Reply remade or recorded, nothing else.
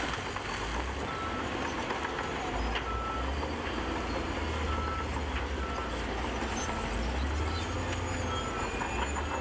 recorded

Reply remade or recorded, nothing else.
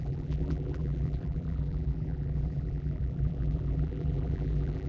remade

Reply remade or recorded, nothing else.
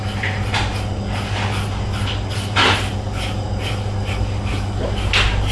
recorded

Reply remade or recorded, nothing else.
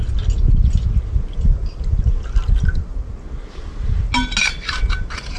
recorded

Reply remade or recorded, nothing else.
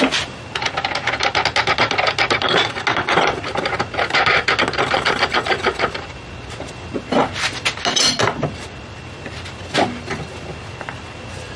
recorded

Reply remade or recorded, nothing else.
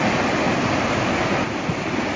recorded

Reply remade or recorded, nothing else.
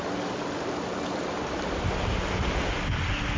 recorded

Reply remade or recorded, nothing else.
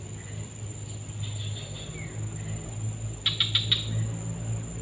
recorded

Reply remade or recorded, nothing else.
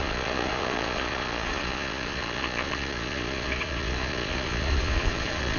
remade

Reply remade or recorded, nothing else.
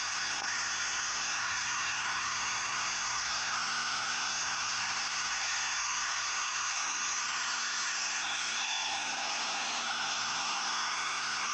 remade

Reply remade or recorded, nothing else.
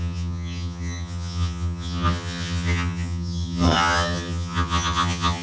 remade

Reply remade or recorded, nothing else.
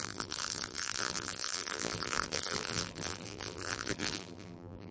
remade